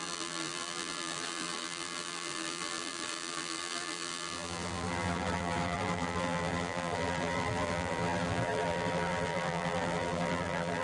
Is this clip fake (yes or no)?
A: yes